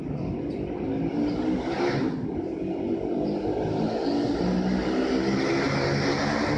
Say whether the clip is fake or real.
real